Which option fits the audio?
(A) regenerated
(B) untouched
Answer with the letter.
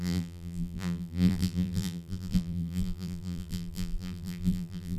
A